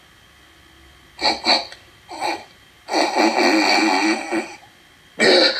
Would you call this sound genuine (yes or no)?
yes